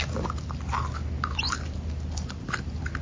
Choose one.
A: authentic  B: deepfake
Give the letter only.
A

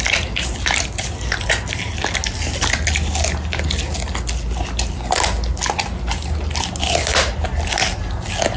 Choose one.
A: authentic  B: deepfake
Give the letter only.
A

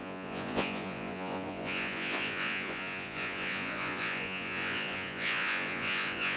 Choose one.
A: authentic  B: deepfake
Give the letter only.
B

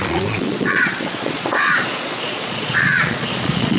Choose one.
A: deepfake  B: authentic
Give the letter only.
A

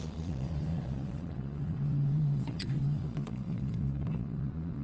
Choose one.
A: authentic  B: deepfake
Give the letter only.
B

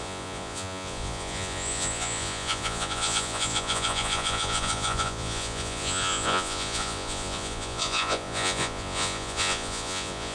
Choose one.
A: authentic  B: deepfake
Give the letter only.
B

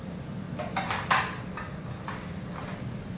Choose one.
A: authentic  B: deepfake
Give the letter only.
A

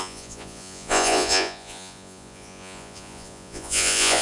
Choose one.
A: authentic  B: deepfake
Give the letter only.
B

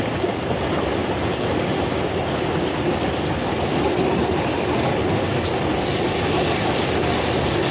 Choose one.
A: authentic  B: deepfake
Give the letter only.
A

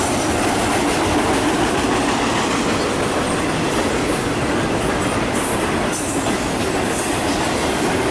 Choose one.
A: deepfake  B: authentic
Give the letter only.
B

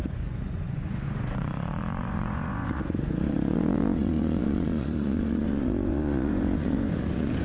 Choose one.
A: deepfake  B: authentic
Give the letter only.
A